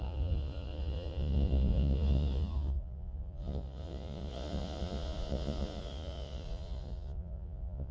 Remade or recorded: remade